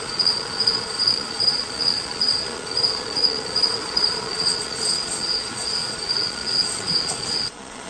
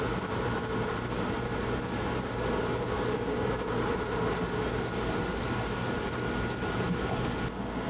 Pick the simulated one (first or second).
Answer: first